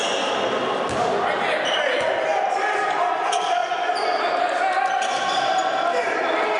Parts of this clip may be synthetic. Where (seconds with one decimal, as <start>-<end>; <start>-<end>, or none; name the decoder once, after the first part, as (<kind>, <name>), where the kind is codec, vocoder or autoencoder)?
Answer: 2.3-3.6 (vocoder, BigVGAN v2); 4.8-5.6